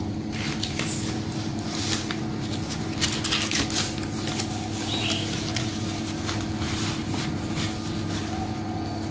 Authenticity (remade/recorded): recorded